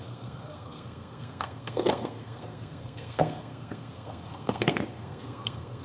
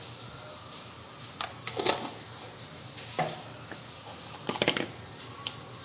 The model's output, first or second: first